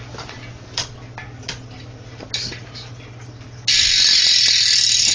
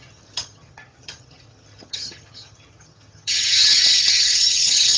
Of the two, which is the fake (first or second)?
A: second